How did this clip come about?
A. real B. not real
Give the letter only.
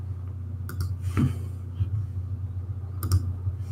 A